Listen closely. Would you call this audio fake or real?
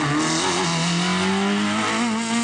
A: real